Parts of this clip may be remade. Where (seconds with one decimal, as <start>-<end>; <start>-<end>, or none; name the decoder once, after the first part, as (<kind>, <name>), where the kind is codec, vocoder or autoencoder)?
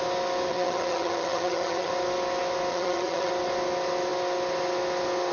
0.5-1.9 (vocoder, HiFi-GAN); 2.7-3.3